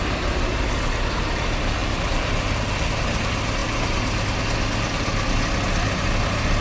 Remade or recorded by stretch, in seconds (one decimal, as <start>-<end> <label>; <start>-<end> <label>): 0.0-1.8 recorded; 1.8-3.2 remade; 3.2-3.6 recorded; 3.6-4.4 remade; 4.4-6.6 recorded